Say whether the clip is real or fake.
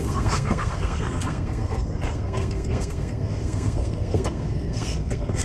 fake